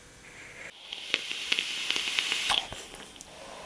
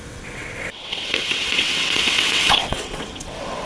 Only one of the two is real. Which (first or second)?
first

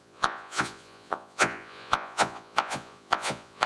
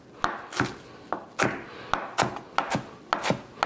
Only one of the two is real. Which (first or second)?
second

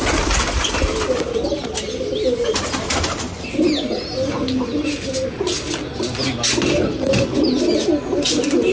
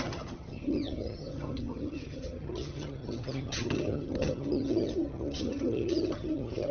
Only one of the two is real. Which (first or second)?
first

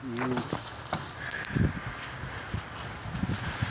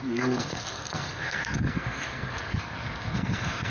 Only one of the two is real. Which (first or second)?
first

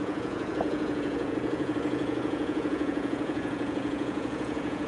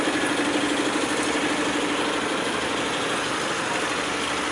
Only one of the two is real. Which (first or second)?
second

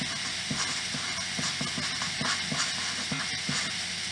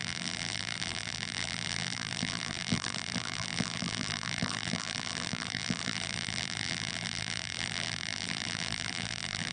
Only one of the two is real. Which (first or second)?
first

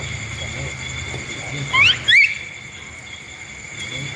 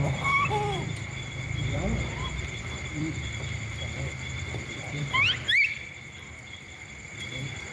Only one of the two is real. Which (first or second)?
first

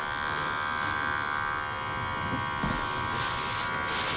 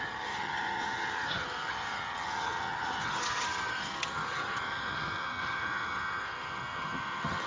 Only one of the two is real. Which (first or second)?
first